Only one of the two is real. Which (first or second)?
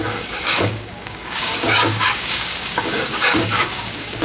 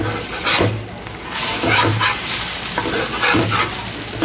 second